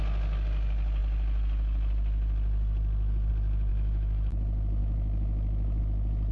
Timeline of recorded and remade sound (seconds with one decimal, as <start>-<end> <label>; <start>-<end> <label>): 0.0-3.7 recorded; 3.7-4.3 remade; 4.3-4.8 recorded; 4.8-5.8 remade; 5.8-6.3 recorded